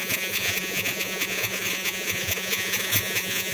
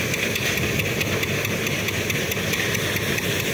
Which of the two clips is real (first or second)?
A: second